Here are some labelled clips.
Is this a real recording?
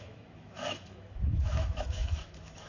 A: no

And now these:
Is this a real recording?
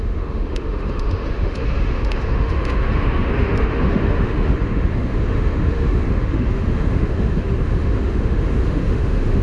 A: no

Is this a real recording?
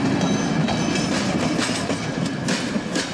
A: yes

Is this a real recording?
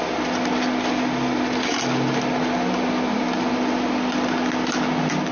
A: yes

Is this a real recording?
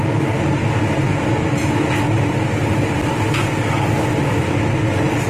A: yes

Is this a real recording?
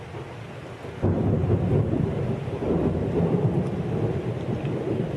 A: yes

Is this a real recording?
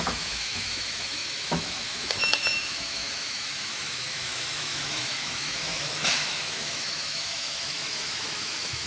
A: no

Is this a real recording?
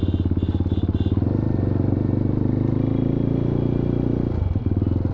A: yes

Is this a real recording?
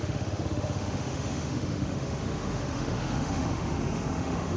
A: no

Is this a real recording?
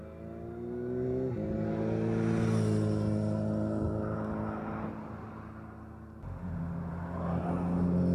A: yes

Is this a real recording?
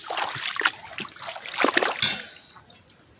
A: yes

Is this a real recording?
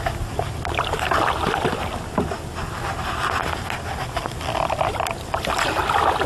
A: yes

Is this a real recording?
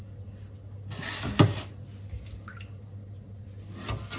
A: yes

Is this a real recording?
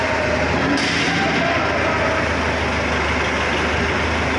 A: yes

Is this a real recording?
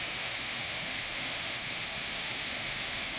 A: no